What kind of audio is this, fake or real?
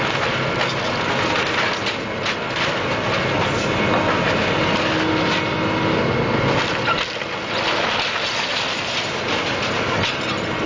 real